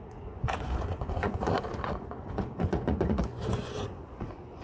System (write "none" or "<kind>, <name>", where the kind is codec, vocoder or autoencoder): vocoder, Vocos